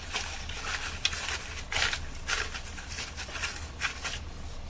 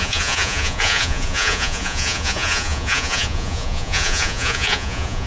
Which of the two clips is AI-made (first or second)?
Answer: second